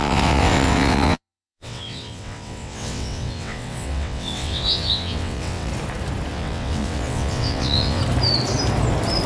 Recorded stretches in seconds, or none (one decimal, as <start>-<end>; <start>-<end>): 5.7-6.3; 8.0-9.3